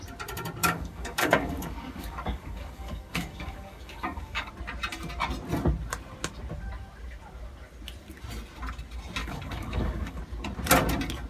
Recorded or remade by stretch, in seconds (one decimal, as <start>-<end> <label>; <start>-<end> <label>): 0.0-0.6 recorded; 0.6-4.5 remade; 4.5-9.2 recorded; 9.2-10.2 remade; 10.2-11.3 recorded